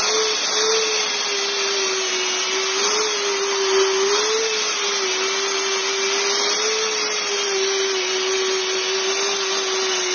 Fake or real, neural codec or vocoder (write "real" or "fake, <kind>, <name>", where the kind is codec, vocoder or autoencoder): real